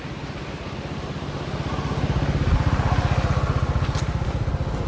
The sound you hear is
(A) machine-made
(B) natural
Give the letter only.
B